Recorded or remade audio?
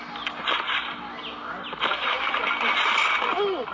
recorded